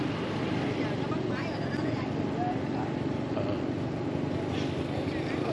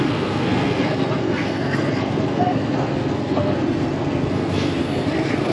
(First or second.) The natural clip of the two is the first